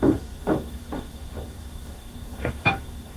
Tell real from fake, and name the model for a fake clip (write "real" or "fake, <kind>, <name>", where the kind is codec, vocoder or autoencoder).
fake, codec, DAC